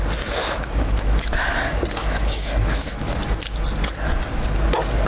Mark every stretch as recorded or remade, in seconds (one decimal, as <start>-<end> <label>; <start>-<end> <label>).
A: 0.0-0.4 recorded; 0.4-1.5 remade; 1.5-2.0 recorded; 2.0-3.2 remade; 3.2-5.1 recorded